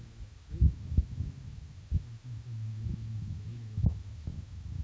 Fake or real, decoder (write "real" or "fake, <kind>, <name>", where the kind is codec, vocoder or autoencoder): fake, autoencoder, DAC-VAE